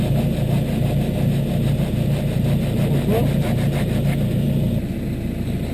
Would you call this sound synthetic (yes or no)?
no